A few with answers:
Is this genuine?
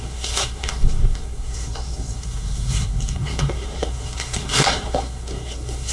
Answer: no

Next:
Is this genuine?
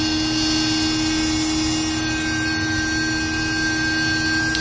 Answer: yes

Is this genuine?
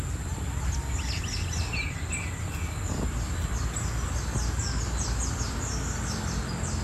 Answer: yes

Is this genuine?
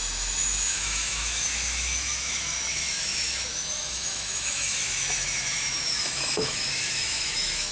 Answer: no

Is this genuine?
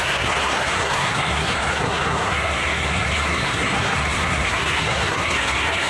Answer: no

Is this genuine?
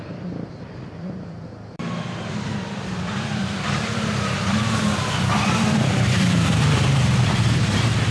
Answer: no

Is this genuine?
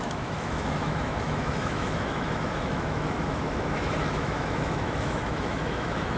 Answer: no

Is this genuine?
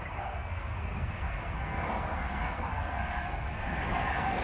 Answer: no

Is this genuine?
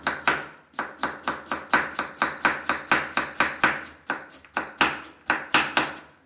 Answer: yes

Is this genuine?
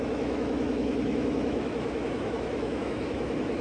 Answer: no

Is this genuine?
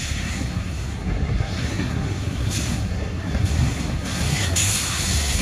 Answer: no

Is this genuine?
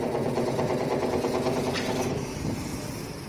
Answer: yes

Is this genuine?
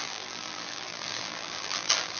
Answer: no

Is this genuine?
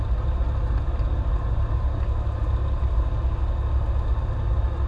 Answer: yes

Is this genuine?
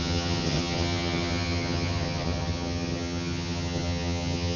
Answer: no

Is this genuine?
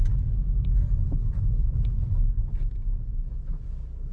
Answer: yes